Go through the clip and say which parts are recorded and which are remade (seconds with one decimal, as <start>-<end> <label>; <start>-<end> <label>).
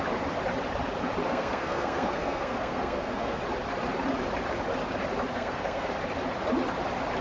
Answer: 0.0-1.3 recorded; 1.3-3.4 remade; 3.4-5.3 recorded; 5.3-5.9 remade; 5.9-7.2 recorded